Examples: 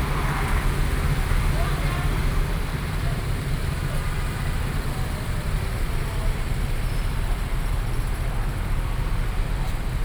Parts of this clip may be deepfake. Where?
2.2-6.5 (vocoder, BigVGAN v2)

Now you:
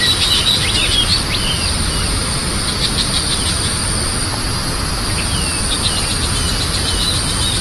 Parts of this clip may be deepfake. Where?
0.0-1.1 (vocoder, BigVGAN v2); 1.7-3.8; 5.1-7.6

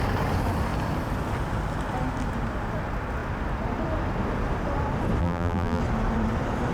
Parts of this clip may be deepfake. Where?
5.2-5.8 (vocoder, BigVGAN v2)

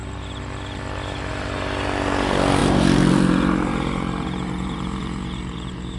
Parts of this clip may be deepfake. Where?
2.6-6.0 (vocoder, BigVGAN v2)

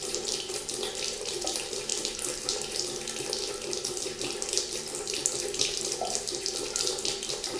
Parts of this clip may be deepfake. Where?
0.0-1.9 (vocoder, BigVGAN v2); 4.5-7.6

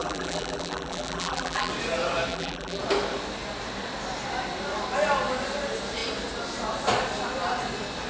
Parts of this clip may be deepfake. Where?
0.0-1.7 (vocoder, BigVGAN v2); 2.3-2.8

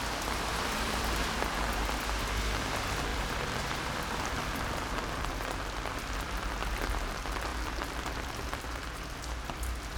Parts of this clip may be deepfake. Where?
0.5-1.8 (vocoder, BigVGAN v2); 3.1-5.3; 7.5-8.3

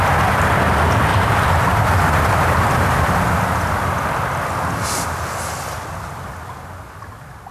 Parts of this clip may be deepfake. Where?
1.1-3.1 (vocoder, BigVGAN v2)